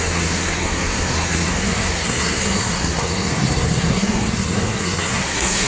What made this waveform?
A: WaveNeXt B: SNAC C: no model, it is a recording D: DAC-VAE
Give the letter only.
B